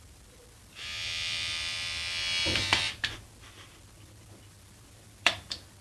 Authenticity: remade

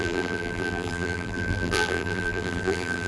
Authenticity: remade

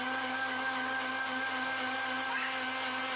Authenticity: recorded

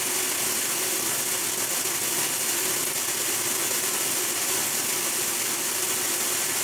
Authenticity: recorded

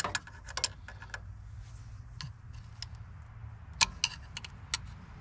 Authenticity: recorded